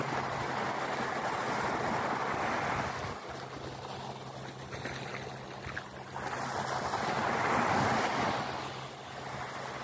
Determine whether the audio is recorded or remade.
recorded